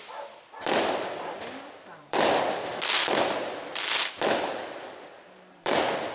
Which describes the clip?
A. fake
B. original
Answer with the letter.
A